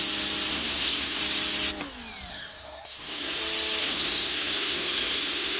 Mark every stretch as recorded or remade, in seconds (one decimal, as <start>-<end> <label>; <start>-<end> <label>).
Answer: 0.0-0.5 recorded; 0.5-1.2 remade; 1.2-2.3 recorded; 2.3-3.4 remade; 3.4-3.8 recorded; 3.8-5.6 remade